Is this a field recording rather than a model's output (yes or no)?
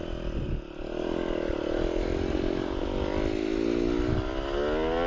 yes